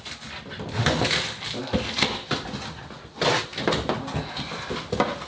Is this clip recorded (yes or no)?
yes